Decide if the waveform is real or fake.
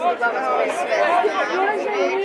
real